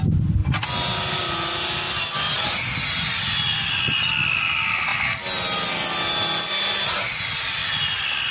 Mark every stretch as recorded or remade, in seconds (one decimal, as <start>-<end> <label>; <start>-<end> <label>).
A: 0.0-8.3 recorded